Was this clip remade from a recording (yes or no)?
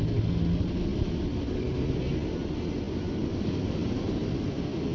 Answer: no